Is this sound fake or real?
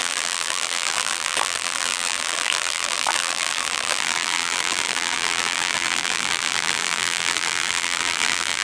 fake